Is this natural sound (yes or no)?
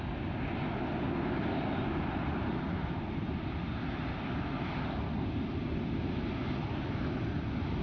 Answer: yes